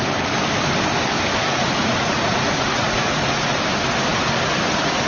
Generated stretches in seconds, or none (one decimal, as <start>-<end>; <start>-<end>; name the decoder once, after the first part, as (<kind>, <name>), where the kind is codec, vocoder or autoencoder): 1.6-3.5 (vocoder, Vocos)